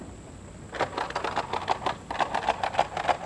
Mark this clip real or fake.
real